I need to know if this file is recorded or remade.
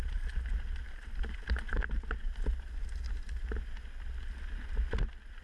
recorded